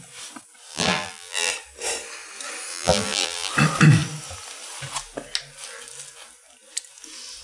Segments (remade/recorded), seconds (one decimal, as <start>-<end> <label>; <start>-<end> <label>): 0.0-0.7 recorded; 0.7-1.5 remade; 1.5-2.7 recorded; 2.7-3.5 remade; 3.5-7.4 recorded